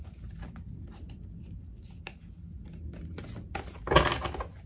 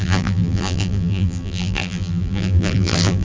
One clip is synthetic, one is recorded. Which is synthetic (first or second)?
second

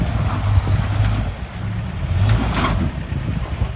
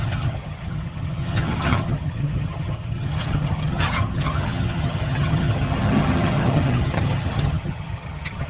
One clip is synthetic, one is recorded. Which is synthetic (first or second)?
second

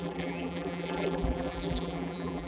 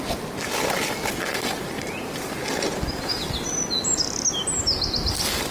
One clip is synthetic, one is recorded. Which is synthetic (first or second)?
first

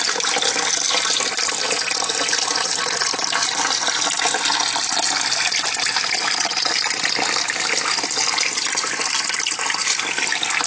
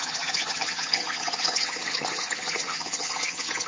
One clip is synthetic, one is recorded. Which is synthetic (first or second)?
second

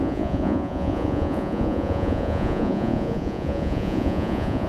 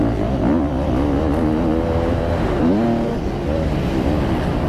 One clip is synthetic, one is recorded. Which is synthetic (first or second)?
first